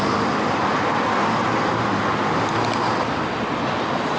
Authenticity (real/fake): real